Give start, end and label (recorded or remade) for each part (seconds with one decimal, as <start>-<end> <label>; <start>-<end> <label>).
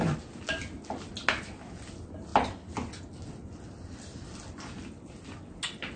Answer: 0.0-6.0 recorded